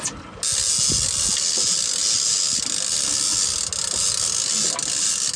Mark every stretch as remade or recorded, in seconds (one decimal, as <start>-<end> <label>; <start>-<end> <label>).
0.0-5.4 recorded